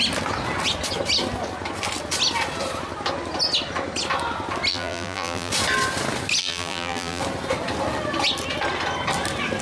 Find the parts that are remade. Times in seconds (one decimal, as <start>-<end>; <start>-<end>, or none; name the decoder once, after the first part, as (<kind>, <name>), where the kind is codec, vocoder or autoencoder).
4.7-5.5 (vocoder, BigVGAN v2); 6.4-7.2